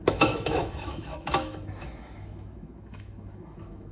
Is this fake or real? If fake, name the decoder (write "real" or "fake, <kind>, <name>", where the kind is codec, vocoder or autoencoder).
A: fake, autoencoder, DAC-VAE